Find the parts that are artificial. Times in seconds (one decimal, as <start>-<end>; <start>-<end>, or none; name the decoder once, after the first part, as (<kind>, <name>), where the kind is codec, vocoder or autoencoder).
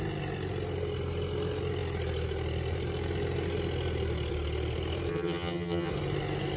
5.1-5.9 (vocoder, HiFi-GAN)